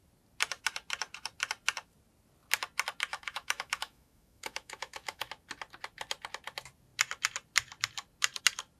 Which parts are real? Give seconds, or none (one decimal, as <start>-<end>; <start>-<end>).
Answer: 0.0-3.1; 5.3-8.8